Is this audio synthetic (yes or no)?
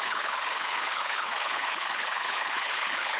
yes